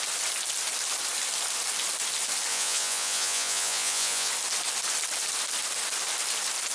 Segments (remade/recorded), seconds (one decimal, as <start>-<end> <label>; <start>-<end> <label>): 0.0-2.5 recorded; 2.5-4.3 remade; 4.3-6.7 recorded

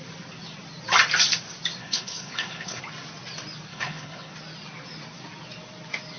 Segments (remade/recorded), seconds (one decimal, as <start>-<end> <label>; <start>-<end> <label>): 0.0-1.8 recorded; 1.8-2.8 remade; 2.8-3.7 recorded; 3.7-4.3 remade; 4.3-6.2 recorded

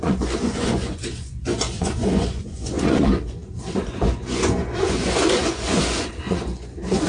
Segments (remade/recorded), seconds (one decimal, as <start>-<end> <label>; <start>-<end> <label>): 0.0-7.1 remade